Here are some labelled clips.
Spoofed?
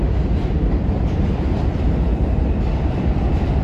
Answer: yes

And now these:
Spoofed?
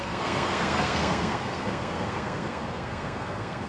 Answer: yes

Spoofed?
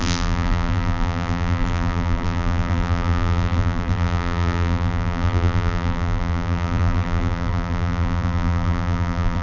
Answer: yes